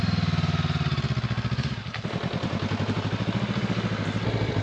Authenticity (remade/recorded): recorded